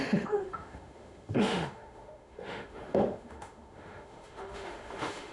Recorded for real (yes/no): no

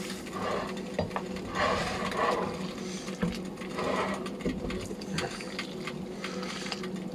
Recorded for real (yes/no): yes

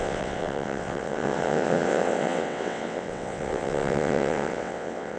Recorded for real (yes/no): no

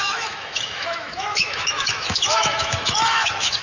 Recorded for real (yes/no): no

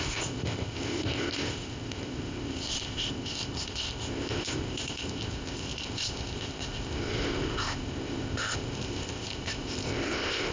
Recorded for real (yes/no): no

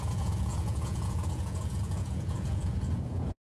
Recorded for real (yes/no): no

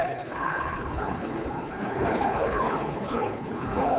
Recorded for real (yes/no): no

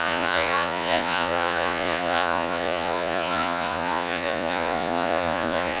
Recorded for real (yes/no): no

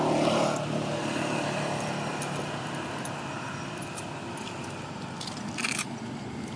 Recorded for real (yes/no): no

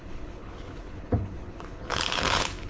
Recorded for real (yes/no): no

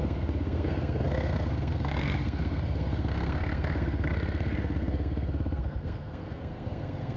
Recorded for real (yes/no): no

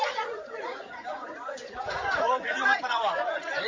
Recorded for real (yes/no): no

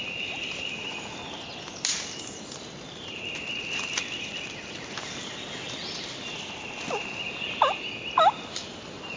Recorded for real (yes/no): yes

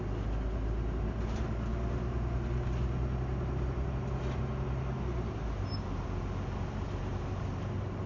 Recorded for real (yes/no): yes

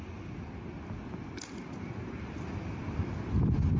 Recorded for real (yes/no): yes